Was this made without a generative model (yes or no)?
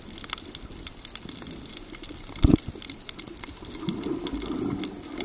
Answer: yes